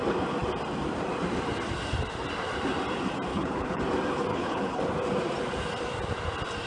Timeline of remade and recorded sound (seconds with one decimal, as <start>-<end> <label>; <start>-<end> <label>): 0.0-3.3 recorded; 3.3-3.8 remade; 3.8-4.3 recorded; 4.3-4.8 remade; 4.8-6.7 recorded